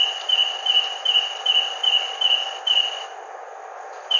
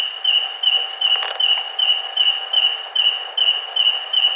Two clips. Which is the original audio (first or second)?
second